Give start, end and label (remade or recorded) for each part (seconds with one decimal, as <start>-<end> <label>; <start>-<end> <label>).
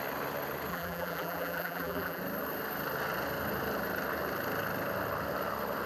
0.0-0.7 recorded; 0.7-2.2 remade; 2.2-5.9 recorded